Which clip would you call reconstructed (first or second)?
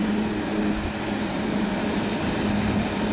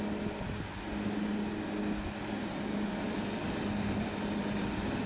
first